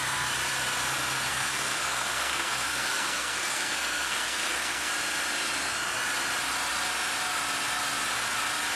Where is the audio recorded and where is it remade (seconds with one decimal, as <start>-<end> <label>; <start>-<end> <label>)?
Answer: 0.0-1.3 recorded; 1.3-4.9 remade; 4.9-8.8 recorded